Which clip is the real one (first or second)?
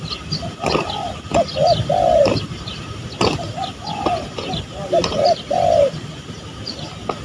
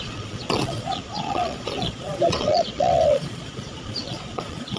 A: first